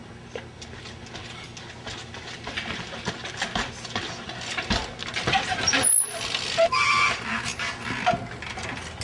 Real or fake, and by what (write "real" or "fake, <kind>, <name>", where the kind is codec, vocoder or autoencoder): real